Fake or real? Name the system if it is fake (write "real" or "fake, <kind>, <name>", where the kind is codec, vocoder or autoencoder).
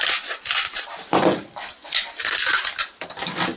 fake, vocoder, BigVGAN v2